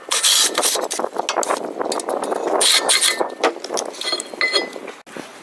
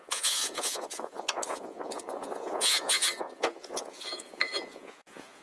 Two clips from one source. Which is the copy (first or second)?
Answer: second